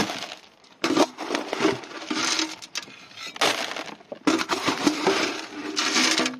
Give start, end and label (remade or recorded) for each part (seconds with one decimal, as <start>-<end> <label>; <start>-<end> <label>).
0.0-6.4 recorded